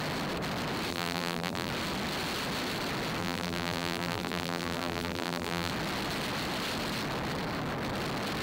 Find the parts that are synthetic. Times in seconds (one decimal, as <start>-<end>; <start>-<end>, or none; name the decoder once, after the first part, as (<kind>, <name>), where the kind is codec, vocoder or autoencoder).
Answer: 0.9-1.7 (vocoder, BigVGAN v2); 3.2-5.7